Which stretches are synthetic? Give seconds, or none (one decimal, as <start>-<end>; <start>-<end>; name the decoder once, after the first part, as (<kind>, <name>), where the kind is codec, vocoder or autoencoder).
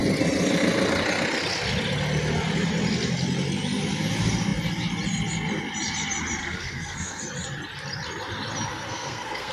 6.4-7.2 (codec, SNAC); 8.7-9.5